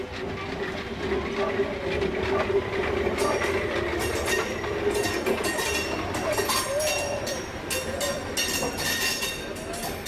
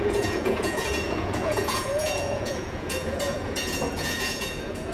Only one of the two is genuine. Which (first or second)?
first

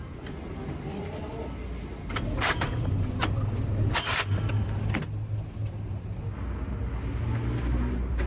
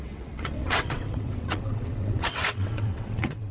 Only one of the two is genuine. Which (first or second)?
first